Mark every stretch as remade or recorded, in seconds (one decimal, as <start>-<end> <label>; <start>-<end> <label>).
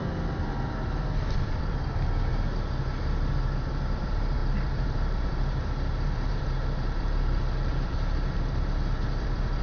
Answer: 0.0-2.3 remade; 2.3-3.3 recorded; 3.3-9.6 remade